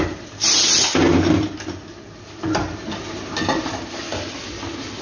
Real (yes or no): yes